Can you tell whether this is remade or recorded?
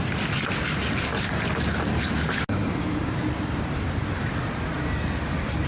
recorded